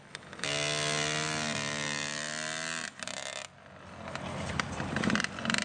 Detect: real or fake real